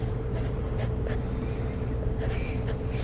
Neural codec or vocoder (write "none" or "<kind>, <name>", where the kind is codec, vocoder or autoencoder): vocoder, BigVGAN v2